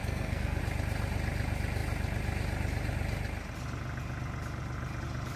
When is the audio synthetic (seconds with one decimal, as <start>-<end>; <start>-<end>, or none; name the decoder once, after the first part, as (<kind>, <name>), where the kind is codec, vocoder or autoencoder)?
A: 0.0-0.6 (codec, SNAC)